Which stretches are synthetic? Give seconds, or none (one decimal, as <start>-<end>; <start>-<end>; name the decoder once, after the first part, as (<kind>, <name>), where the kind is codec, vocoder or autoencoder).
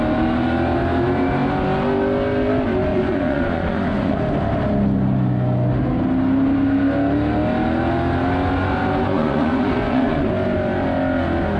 2.9-4.2 (vocoder, Vocos); 9.1-10.3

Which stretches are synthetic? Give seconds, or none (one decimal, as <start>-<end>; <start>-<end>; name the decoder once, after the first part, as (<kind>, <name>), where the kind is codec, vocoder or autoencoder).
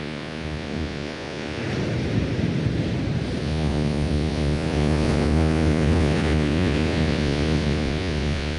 0.0-1.6 (vocoder, Vocos); 3.4-8.6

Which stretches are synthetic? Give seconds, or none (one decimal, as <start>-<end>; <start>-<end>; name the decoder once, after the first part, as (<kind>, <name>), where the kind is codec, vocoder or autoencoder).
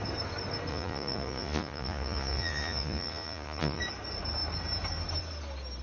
0.7-3.8 (vocoder, Vocos)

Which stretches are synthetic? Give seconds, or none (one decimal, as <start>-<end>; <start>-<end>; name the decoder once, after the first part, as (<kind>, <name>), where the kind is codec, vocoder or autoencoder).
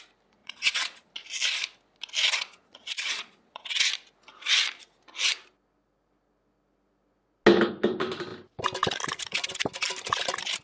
0.4-1.1 (vocoder, Vocos); 2.4-3.9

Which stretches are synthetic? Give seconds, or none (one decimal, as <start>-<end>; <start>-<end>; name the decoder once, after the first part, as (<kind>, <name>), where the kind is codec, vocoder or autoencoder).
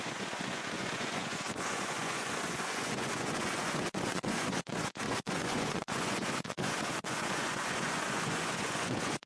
0.0-9.3 (vocoder, Vocos)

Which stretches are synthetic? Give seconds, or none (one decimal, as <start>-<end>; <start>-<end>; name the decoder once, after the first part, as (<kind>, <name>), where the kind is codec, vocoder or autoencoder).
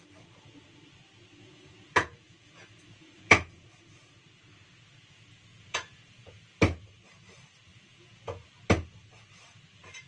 1.4-3.7 (vocoder, Vocos); 5.5-6.6; 7.7-8.5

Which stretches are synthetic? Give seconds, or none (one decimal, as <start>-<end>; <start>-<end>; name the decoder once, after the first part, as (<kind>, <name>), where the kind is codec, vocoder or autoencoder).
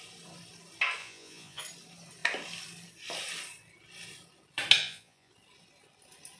1.0-1.6 (vocoder, Vocos); 4.8-5.3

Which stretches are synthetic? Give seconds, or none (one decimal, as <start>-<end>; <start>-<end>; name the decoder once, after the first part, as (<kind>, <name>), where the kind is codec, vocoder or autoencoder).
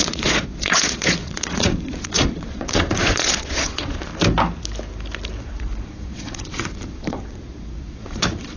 0.0-4.1 (vocoder, Vocos); 5.4-8.6